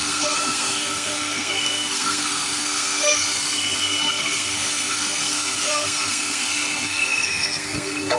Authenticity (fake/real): fake